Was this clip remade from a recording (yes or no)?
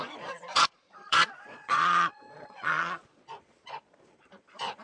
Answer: yes